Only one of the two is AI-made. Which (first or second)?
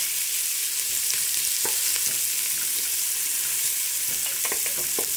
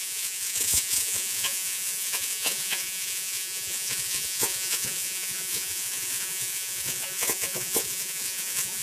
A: second